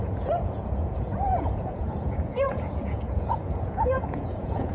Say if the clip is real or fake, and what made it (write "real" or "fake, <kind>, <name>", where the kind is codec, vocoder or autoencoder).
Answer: fake, vocoder, Vocos